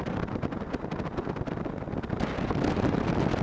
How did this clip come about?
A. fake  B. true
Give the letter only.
B